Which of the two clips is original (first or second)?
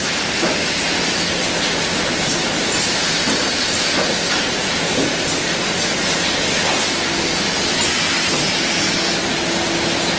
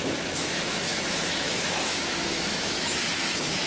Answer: first